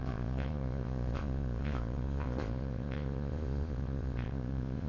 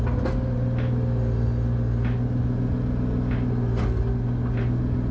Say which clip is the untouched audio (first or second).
second